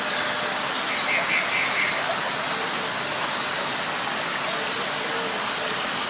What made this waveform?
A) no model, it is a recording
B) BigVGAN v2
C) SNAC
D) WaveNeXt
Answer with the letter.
A